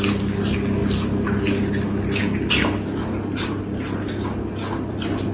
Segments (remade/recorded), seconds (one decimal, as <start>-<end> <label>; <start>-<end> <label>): 0.0-5.3 recorded